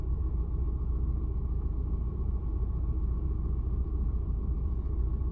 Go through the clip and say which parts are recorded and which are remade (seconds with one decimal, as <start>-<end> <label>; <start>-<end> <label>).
0.0-1.7 recorded; 1.7-5.3 remade